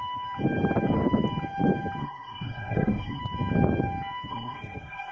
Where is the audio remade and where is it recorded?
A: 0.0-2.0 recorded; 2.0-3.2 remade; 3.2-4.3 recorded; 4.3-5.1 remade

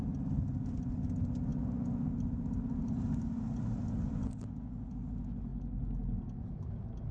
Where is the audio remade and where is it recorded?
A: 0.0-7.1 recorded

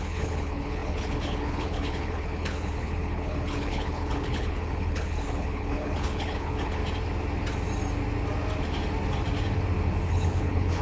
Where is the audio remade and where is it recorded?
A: 0.0-6.8 remade; 6.8-10.1 recorded; 10.1-10.8 remade

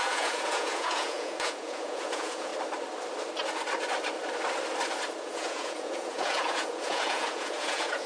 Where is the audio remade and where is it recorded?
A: 0.0-2.5 remade; 2.5-5.2 recorded; 5.2-8.1 remade